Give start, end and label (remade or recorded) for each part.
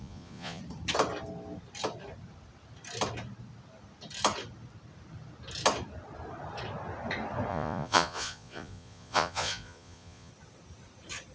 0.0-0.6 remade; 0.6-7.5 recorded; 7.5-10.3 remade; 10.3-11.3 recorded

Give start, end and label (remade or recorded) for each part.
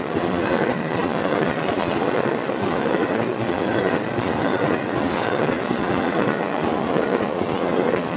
0.0-8.2 remade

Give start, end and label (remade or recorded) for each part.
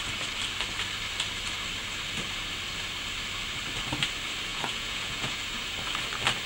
0.0-4.5 recorded; 4.5-5.4 remade; 5.4-6.5 recorded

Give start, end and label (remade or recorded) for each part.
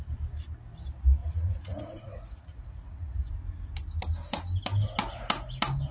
0.0-1.2 recorded; 1.2-3.3 remade; 3.3-5.9 recorded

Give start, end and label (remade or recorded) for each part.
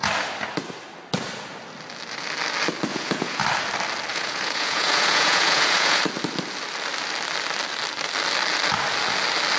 0.0-2.9 recorded; 2.9-3.4 remade; 3.4-4.1 recorded; 4.1-6.0 remade; 6.0-9.6 recorded